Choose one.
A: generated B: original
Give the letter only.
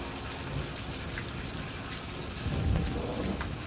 B